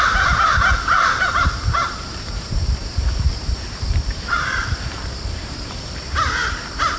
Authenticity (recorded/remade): remade